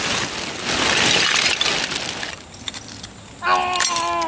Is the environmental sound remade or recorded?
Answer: recorded